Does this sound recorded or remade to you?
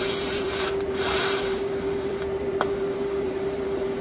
remade